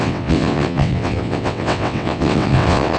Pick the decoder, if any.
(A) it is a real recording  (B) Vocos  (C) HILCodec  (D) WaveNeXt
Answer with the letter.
D